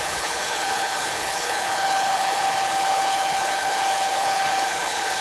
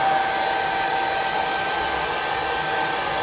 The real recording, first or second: second